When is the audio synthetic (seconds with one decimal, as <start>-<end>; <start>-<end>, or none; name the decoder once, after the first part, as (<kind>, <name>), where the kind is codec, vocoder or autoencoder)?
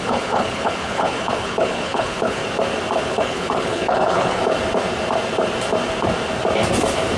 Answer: 0.0-2.4 (codec, HILCodec); 3.1-4.4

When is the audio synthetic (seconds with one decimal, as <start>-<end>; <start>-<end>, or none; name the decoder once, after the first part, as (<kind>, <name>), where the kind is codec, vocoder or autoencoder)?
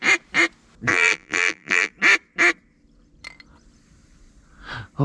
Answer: 0.9-1.9 (vocoder, BigVGAN v2)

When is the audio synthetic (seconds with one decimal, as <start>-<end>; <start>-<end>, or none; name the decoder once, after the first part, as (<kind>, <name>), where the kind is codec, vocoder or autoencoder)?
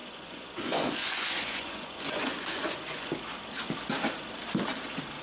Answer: 0.0-3.1 (vocoder, Vocos)